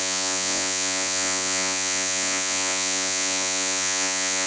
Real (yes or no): no